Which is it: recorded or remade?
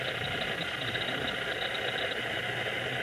recorded